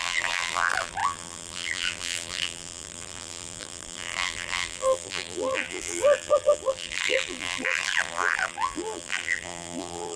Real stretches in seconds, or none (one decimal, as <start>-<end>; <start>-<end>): none